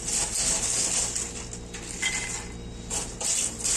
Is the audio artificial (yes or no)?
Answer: no